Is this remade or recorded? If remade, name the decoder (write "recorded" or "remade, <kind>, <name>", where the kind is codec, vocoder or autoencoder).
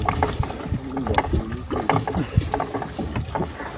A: recorded